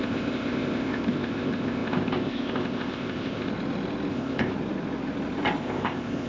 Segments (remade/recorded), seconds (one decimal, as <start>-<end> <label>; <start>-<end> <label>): 0.0-3.5 remade; 3.5-4.1 recorded; 4.1-4.5 remade; 4.5-5.6 recorded; 5.6-6.3 remade

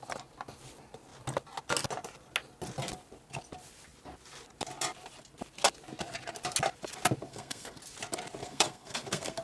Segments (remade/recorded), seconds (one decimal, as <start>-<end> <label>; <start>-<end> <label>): 0.0-7.3 recorded; 7.3-7.8 remade; 7.8-8.4 recorded; 8.4-9.4 remade

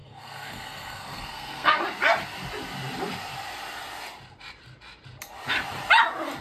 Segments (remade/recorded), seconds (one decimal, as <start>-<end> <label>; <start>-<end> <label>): 0.0-1.8 remade; 1.8-6.4 recorded

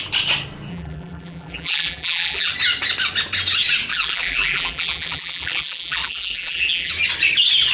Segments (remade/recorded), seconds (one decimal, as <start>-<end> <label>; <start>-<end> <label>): 0.0-0.7 recorded; 0.7-2.5 remade; 2.5-3.9 recorded; 3.9-6.9 remade; 6.9-7.7 recorded

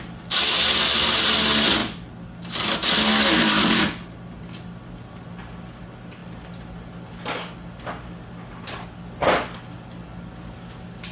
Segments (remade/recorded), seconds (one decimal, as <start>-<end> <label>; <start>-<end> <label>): 0.0-11.1 recorded